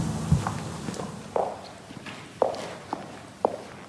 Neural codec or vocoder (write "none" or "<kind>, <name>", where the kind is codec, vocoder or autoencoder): none